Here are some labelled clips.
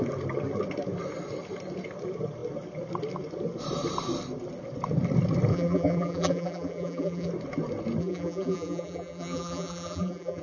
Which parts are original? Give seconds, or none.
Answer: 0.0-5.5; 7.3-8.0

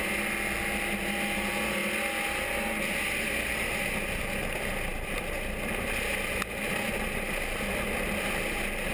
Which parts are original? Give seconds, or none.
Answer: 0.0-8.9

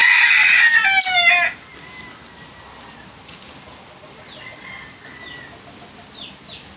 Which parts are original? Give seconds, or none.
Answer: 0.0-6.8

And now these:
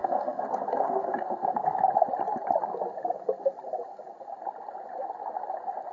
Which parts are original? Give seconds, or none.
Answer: 1.9-5.9

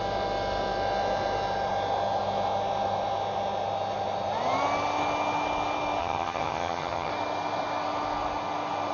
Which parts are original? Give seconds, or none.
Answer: 0.0-6.0; 7.1-8.9

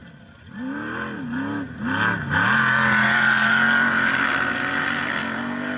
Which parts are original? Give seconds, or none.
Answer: 0.0-5.8

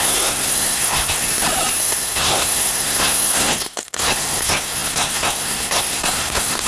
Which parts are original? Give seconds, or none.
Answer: 1.3-1.8

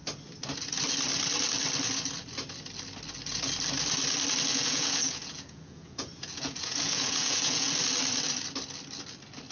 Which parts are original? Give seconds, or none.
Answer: 0.0-4.5; 7.7-9.5